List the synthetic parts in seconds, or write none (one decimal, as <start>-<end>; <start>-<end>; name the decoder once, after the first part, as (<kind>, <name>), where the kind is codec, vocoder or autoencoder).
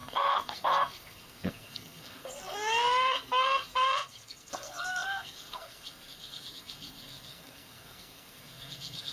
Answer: 0.0-9.1 (codec, SNAC)